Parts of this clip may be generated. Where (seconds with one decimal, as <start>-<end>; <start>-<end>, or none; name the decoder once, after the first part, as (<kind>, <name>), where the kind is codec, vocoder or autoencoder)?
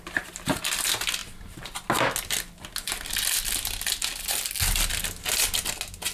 none